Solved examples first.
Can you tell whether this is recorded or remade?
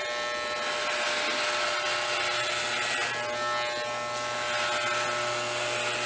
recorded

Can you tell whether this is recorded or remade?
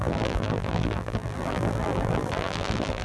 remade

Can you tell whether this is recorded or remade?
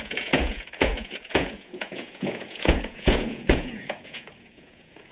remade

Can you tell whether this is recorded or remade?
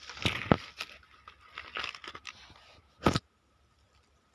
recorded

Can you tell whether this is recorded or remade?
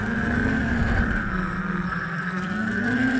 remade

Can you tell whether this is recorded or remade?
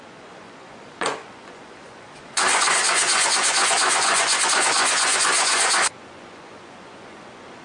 remade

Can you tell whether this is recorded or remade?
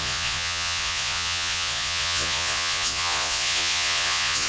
remade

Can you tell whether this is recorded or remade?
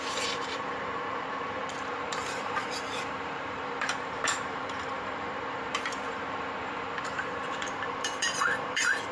remade